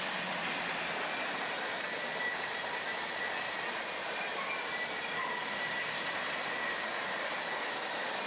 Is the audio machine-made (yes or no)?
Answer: no